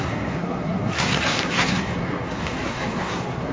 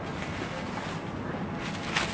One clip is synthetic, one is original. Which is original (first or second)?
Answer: second